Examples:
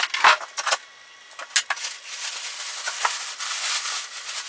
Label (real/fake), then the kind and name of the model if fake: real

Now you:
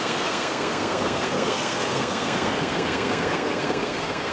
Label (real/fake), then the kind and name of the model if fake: fake, codec, SNAC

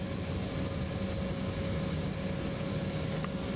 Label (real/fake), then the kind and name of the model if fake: real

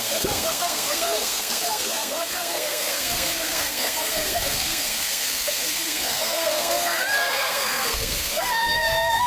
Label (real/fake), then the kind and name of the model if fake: fake, codec, SNAC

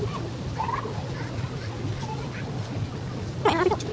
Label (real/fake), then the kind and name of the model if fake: real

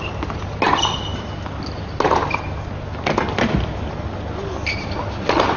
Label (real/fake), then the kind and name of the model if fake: real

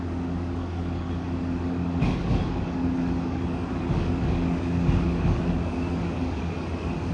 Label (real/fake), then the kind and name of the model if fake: fake, codec, DAC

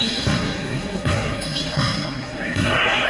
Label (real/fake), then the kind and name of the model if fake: fake, codec, SNAC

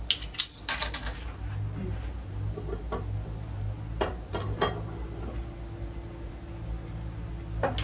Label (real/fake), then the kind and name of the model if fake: real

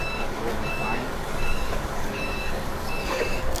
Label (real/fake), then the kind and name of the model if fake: fake, codec, DAC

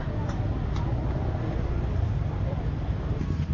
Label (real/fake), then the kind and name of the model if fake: real